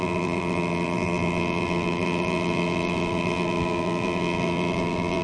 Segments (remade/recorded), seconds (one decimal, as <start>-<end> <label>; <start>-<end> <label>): 0.0-5.2 remade